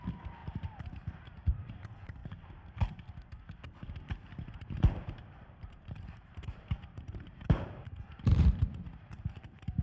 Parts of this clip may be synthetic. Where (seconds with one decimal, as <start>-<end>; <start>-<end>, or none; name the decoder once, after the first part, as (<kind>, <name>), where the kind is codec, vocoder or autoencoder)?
0.0-2.2 (vocoder, BigVGAN v2); 4.1-9.8